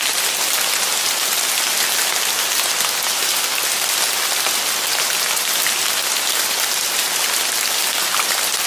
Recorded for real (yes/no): yes